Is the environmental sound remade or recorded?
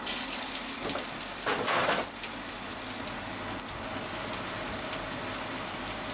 recorded